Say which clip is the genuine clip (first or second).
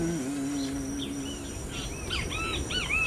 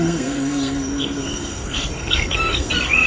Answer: first